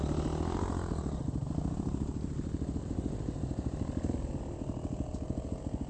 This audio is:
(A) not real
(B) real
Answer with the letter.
B